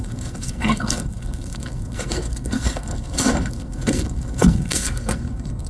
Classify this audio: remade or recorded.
remade